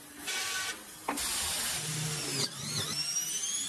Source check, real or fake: real